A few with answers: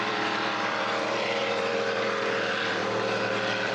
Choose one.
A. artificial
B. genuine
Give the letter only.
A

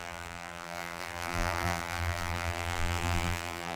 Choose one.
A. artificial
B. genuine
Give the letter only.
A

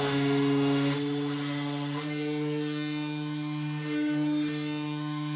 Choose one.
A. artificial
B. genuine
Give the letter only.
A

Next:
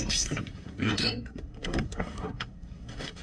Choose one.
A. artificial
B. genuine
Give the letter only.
A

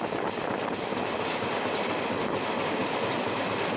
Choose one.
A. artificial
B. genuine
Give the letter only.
B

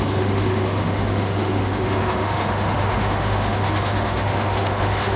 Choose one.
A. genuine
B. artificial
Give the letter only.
B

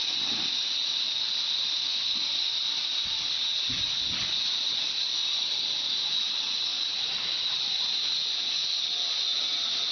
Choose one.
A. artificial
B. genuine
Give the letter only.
B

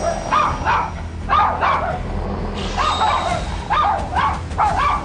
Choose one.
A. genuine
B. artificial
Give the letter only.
A